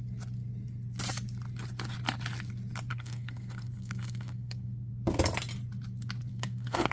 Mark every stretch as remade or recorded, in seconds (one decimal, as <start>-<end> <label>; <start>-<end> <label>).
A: 0.0-2.9 recorded; 2.9-4.9 remade; 4.9-6.3 recorded; 6.3-6.9 remade